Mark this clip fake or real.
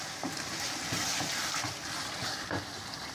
fake